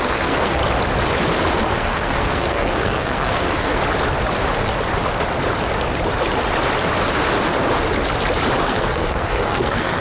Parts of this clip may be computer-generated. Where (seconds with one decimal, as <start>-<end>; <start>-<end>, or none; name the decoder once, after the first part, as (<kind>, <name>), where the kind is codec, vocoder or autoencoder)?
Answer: 0.0-0.6 (codec, SNAC); 1.7-3.8; 8.6-10.0